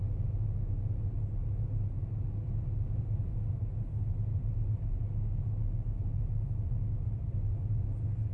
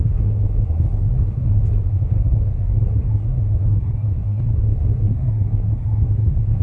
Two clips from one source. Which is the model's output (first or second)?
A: second